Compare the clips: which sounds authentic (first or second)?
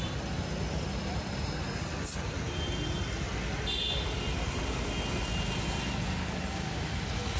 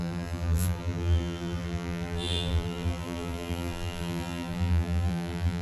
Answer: first